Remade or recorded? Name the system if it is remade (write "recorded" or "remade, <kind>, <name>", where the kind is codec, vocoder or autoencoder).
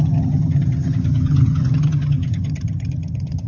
remade, vocoder, HiFi-GAN